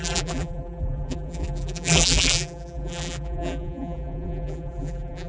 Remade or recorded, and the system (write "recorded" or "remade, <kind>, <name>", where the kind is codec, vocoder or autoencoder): remade, vocoder, BigVGAN v2